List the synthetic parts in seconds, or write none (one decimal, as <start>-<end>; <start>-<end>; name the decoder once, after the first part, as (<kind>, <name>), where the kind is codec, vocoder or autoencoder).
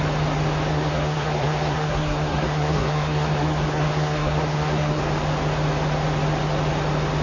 0.7-5.0 (codec, SNAC)